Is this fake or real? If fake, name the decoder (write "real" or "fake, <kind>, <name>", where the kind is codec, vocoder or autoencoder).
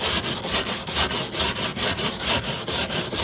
real